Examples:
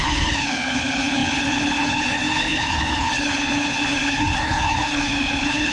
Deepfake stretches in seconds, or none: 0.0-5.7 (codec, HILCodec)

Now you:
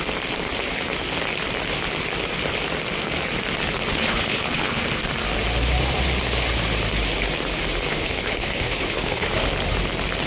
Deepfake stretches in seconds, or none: 3.9-4.8 (codec, HILCodec); 7.9-9.3

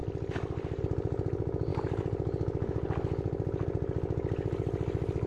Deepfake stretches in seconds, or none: none

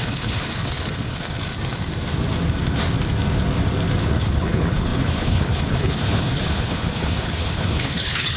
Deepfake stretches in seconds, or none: 0.0-1.4 (codec, HILCodec); 4.0-8.4